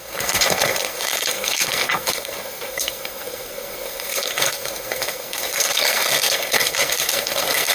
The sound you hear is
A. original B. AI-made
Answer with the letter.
B